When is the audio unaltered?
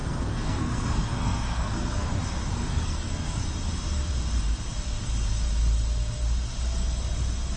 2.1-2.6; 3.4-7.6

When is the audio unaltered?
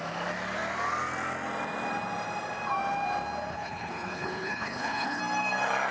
0.0-3.5; 5.2-5.9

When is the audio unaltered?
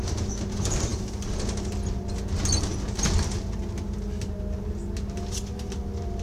0.0-6.2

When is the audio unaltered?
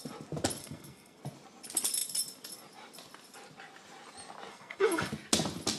0.0-0.6; 1.2-4.5; 5.1-5.8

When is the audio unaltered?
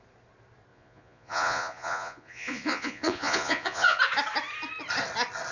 0.0-0.7; 4.0-5.5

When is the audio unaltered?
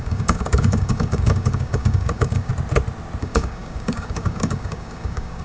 2.5-3.2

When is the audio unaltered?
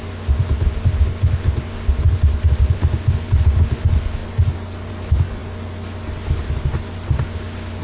0.0-7.8